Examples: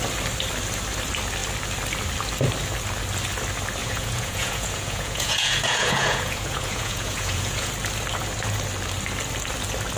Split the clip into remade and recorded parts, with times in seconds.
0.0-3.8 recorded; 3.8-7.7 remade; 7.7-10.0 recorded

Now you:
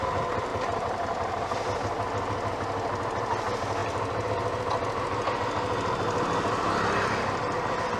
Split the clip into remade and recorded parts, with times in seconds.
0.0-3.8 recorded; 3.8-4.3 remade; 4.3-8.0 recorded

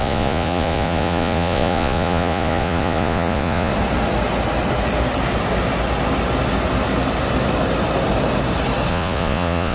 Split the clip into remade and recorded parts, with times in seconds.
0.0-3.7 remade; 3.7-8.9 recorded; 8.9-9.7 remade